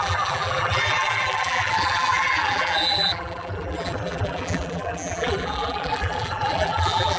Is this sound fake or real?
fake